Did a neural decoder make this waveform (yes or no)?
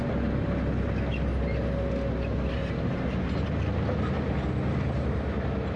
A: no